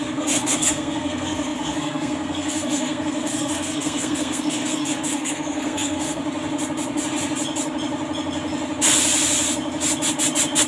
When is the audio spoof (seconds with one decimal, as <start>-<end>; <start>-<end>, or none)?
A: 0.0-6.2